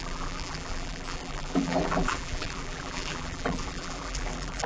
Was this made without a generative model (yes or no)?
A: no